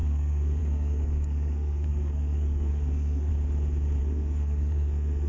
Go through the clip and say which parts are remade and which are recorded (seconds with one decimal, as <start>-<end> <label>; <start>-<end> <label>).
0.0-3.3 remade; 3.3-4.0 recorded; 4.0-5.3 remade